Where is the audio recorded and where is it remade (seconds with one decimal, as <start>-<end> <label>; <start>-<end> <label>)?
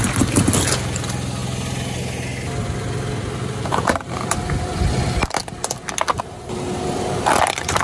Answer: 0.0-7.8 recorded